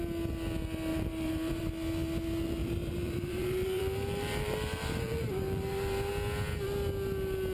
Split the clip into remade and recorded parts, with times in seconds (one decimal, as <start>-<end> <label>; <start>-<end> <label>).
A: 0.0-0.9 recorded; 0.9-1.6 remade; 1.6-2.6 recorded; 2.6-6.1 remade; 6.1-7.5 recorded